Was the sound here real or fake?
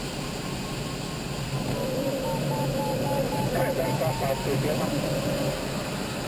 real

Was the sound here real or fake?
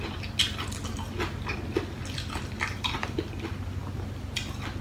real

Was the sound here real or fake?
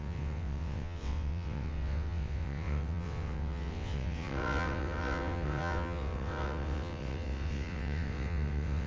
fake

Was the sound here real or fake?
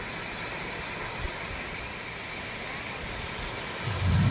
real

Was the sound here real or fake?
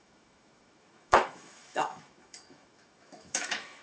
fake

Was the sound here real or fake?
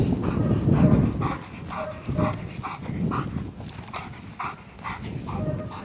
real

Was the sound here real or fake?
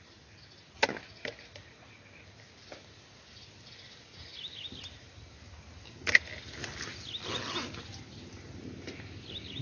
real